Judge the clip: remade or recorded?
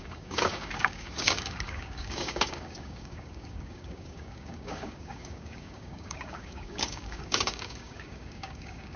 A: remade